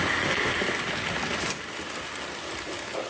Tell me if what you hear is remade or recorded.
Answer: recorded